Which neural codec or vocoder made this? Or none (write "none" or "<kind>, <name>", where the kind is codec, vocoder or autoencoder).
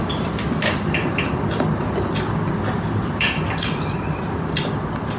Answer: vocoder, BigVGAN v2